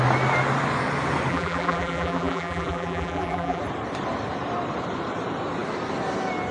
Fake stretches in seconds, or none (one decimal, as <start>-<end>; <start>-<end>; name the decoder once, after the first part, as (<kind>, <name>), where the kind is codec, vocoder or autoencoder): 1.3-3.6 (vocoder, BigVGAN v2)